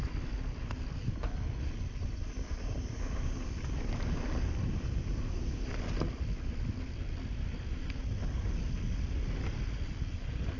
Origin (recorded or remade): recorded